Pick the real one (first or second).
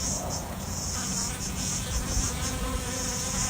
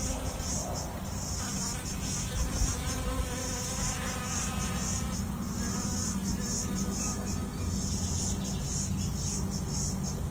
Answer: second